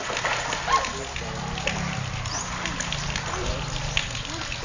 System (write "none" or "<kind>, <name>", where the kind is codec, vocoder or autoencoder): none